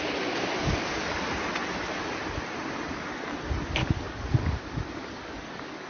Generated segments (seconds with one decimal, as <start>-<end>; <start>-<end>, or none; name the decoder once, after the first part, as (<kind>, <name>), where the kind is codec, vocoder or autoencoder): 3.8-5.9 (codec, DAC)